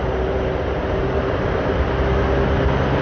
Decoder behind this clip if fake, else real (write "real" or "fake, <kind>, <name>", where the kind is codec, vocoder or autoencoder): real